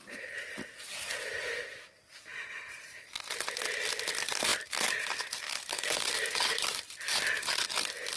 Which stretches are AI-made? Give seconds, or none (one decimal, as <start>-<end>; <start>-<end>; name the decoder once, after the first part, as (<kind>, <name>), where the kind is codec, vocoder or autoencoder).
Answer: none